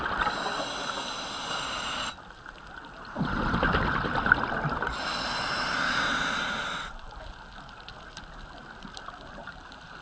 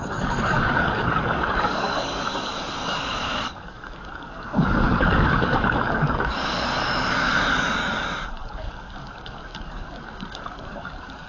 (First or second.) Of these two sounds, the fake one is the second